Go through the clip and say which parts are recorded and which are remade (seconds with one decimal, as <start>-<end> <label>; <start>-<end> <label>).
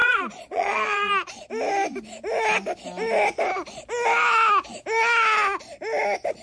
0.0-1.1 remade; 1.1-6.4 recorded